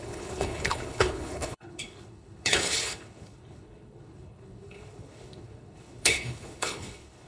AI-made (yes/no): yes